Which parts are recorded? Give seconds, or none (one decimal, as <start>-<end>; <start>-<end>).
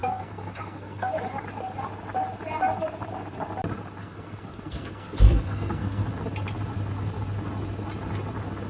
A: 1.1-4.0; 6.1-8.7